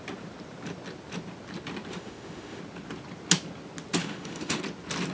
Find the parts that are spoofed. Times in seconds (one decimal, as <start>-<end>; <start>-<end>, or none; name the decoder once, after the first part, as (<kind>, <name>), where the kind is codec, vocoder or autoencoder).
1.9-2.6 (autoencoder, DAC-VAE); 4.0-4.6